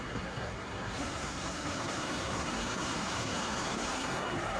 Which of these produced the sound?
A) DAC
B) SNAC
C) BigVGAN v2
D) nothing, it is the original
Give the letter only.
B